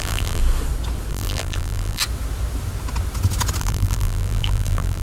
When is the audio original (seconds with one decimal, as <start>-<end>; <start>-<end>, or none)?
0.4-1.1; 2.0-3.6